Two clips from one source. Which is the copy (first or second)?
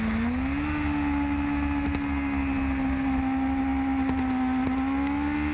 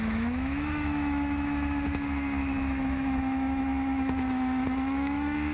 second